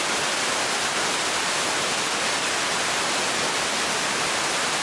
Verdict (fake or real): real